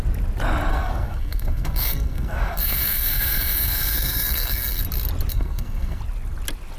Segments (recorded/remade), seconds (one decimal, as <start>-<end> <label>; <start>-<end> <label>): 0.0-0.7 recorded; 0.7-4.8 remade; 4.8-5.3 recorded; 5.3-6.0 remade; 6.0-6.8 recorded

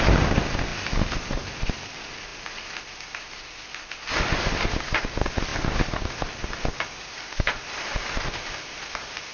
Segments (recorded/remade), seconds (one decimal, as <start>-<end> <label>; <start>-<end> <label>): 0.0-9.3 recorded

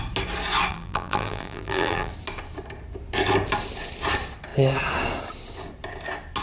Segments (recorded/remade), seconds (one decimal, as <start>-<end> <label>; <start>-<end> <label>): 0.0-0.7 recorded; 0.7-2.1 remade; 2.1-6.4 recorded

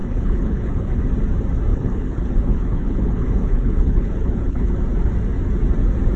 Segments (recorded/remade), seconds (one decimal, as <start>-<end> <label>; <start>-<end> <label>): 0.0-1.0 remade; 1.0-1.7 recorded; 1.7-4.7 remade; 4.7-6.2 recorded